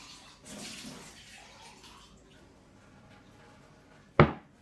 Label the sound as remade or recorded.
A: recorded